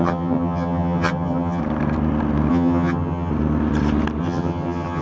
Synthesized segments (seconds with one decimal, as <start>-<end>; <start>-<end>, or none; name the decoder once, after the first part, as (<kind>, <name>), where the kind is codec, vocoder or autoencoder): 0.0-1.6 (vocoder, HiFi-GAN); 2.5-3.3; 4.2-5.0